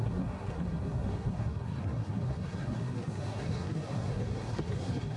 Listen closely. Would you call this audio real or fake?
fake